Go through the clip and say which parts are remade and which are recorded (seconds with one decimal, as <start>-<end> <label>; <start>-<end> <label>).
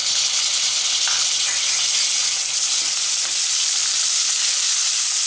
0.0-5.3 recorded